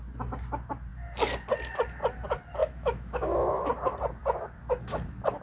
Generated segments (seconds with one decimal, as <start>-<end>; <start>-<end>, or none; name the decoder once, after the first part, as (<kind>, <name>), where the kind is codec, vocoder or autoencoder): 2.6-3.7 (autoencoder, DAC-VAE)